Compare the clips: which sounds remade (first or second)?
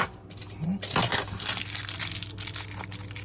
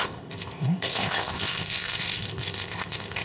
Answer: second